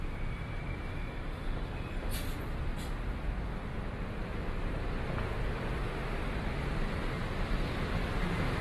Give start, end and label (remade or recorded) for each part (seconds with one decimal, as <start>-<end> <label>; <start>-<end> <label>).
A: 0.0-1.0 recorded; 1.0-4.9 remade; 4.9-5.8 recorded; 5.8-8.1 remade; 8.1-8.6 recorded